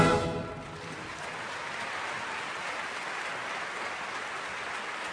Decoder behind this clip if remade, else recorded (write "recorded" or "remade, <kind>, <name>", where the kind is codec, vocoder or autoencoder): recorded